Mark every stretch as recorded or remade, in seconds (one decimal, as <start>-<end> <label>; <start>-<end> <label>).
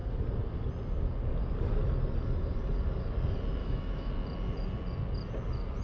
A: 0.0-3.6 recorded; 3.6-4.1 remade; 4.1-5.8 recorded